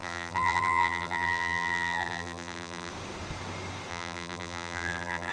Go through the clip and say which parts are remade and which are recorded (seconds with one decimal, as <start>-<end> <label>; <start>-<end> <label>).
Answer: 0.0-2.9 remade; 2.9-3.9 recorded; 3.9-5.3 remade